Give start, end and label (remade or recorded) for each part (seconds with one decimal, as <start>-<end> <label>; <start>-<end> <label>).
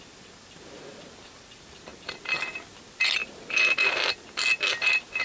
0.0-5.2 recorded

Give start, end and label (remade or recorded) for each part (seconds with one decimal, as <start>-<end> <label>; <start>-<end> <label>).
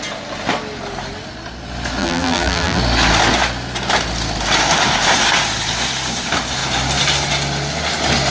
0.0-2.0 recorded; 2.0-2.8 remade; 2.8-8.3 recorded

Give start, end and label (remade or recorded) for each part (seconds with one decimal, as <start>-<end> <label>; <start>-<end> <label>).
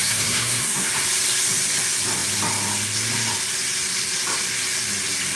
0.0-0.9 remade; 0.9-5.4 recorded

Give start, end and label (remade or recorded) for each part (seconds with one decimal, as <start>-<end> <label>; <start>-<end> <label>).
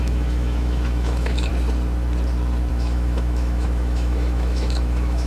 0.0-1.5 remade; 1.5-2.7 recorded; 2.7-5.3 remade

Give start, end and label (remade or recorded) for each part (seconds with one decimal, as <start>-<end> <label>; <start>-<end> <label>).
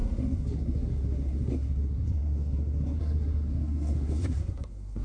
0.0-5.0 remade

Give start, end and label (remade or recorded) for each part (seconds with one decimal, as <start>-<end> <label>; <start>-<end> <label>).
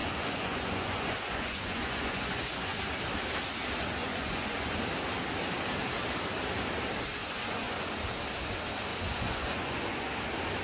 0.0-2.8 remade; 2.8-4.0 recorded; 4.0-4.8 remade; 4.8-7.2 recorded; 7.2-7.9 remade; 7.9-8.9 recorded; 8.9-10.1 remade; 10.1-10.6 recorded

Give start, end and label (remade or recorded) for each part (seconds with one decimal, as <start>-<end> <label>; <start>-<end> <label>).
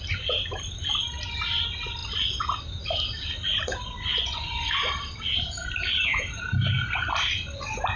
0.0-4.1 recorded; 4.1-4.7 remade; 4.7-8.0 recorded